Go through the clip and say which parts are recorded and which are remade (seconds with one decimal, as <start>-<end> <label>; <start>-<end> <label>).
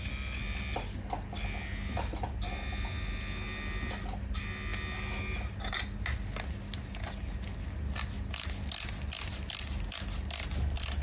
0.0-11.0 recorded